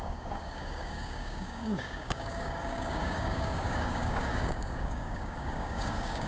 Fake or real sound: fake